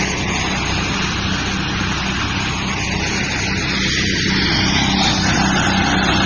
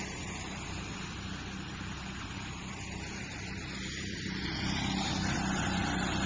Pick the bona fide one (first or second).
first